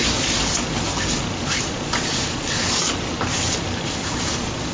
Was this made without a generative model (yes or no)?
yes